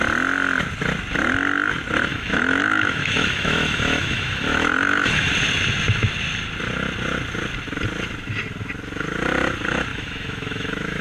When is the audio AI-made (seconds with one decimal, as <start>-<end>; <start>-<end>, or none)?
2.1-5.3; 9.9-11.0